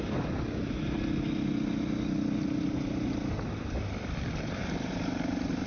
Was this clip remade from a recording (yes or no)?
no